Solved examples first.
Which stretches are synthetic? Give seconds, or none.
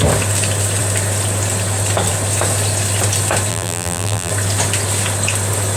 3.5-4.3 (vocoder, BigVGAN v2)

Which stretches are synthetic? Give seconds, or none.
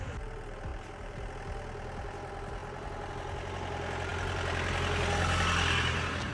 0.7-1.3 (vocoder, BigVGAN v2)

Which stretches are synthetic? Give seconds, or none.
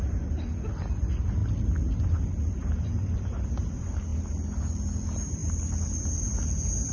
none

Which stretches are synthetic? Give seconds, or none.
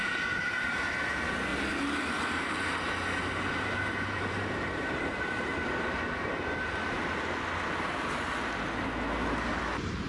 0.0-1.5 (vocoder, BigVGAN v2); 3.6-5.5; 9.5-10.1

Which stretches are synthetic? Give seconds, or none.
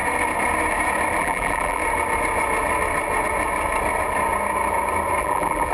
1.2-1.8 (vocoder, BigVGAN v2); 5.2-5.7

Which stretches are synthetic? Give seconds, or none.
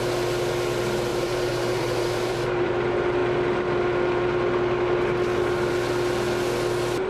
1.1-2.7 (vocoder, BigVGAN v2)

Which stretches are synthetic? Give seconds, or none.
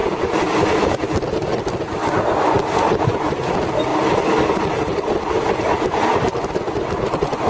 0.0-0.6 (vocoder, BigVGAN v2); 2.0-2.5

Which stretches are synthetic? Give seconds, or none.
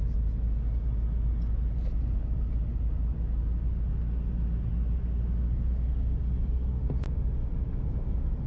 none